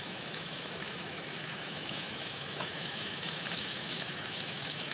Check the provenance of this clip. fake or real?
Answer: fake